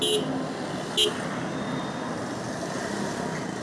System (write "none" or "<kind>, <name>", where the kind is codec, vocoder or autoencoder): none